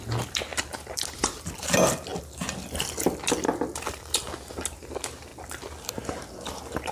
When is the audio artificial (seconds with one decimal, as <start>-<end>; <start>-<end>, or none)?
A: none